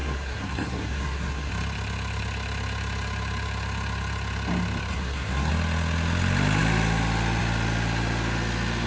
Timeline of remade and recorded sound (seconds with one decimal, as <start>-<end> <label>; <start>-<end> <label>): 0.0-1.5 remade; 1.5-4.9 recorded; 4.9-5.5 remade; 5.5-8.9 recorded